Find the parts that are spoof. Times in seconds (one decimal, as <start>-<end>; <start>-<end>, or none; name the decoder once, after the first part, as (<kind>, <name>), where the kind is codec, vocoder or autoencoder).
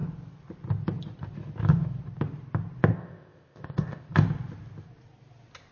2.9-4.1 (codec, ZipCodec)